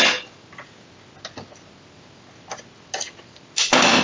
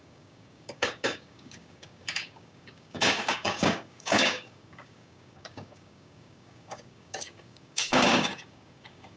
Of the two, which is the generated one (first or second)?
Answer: second